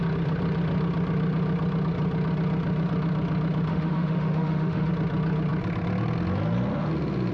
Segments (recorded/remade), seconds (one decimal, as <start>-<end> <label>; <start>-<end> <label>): 0.0-3.7 recorded; 3.7-4.9 remade; 4.9-7.3 recorded